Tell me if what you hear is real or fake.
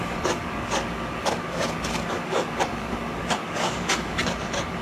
fake